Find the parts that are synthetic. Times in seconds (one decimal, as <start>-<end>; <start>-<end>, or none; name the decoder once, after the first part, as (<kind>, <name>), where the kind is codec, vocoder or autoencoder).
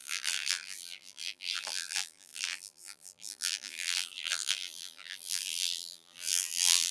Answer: 0.0-6.9 (vocoder, BigVGAN v2)